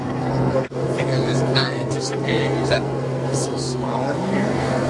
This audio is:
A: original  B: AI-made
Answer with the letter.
B